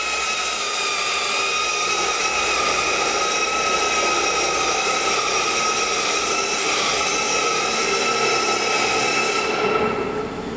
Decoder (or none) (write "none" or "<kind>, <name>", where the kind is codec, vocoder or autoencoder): none